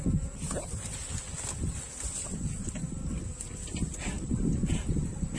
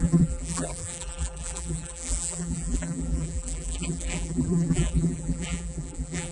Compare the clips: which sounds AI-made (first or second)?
second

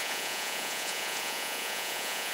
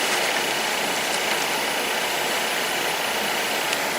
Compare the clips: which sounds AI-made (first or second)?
first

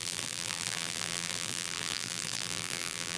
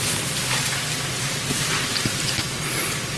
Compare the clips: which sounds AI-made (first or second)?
first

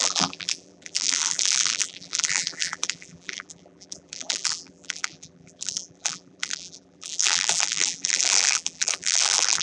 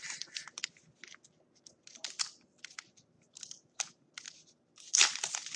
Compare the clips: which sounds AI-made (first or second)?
first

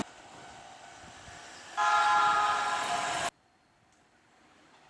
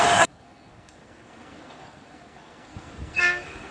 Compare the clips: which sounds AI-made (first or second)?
second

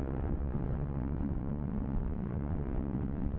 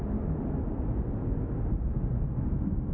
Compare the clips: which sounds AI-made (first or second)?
first